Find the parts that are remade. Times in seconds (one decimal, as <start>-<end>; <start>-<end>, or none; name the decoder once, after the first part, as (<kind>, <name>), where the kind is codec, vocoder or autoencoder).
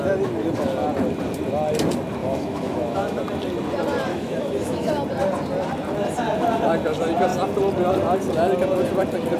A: 2.2-3.2 (autoencoder, DAC-VAE); 4.1-4.9